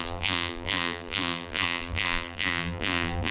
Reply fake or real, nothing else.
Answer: fake